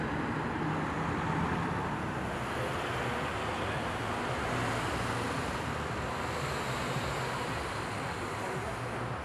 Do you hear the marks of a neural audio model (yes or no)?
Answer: no